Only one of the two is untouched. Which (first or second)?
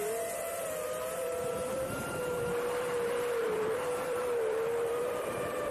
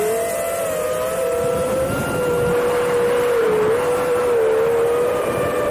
second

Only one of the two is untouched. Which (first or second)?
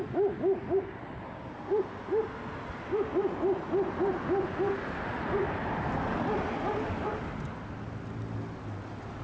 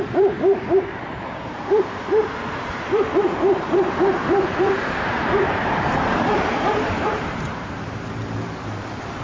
first